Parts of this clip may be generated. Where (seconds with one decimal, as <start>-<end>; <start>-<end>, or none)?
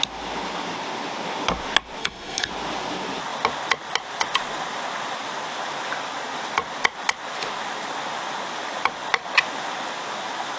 2.0-2.5